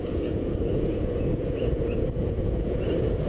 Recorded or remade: remade